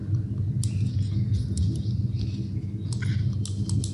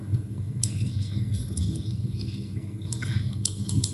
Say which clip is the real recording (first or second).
first